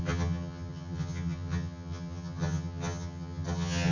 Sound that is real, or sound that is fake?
fake